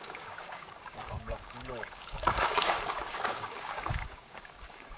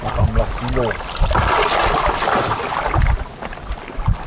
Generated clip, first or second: first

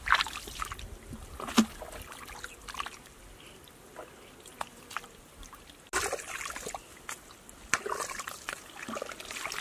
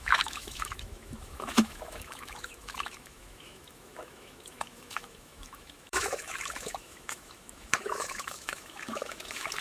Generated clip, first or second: second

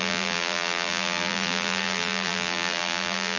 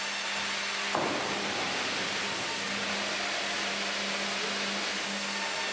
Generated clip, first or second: first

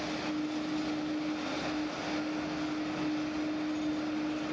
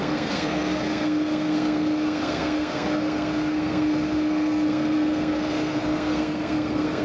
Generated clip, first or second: second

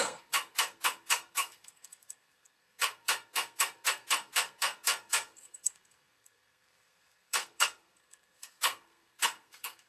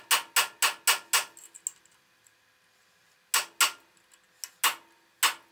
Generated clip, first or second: first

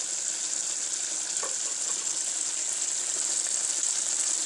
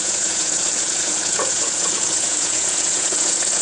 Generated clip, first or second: second